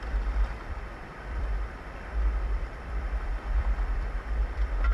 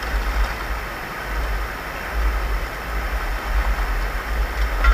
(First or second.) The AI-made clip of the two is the first